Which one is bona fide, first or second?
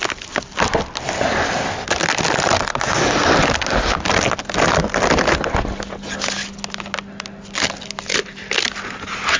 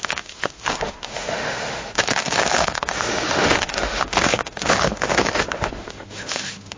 first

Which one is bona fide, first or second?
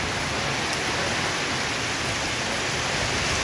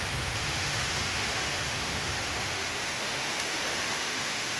first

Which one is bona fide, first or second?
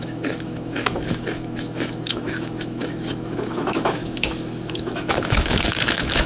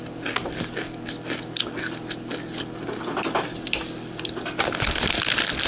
second